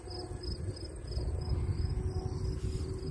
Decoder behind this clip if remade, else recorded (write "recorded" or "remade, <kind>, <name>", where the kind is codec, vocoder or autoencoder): recorded